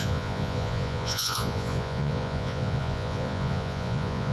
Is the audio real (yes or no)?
no